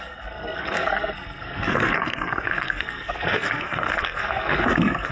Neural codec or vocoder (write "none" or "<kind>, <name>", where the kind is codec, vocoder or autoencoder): codec, SNAC